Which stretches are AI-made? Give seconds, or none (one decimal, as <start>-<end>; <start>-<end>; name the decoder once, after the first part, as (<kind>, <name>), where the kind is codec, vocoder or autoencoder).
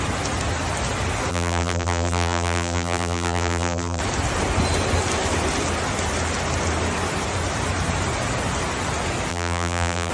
1.3-4.0 (vocoder, BigVGAN v2); 9.3-10.1